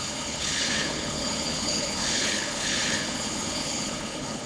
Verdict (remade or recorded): remade